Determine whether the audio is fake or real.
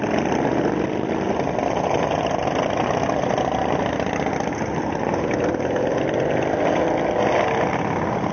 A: real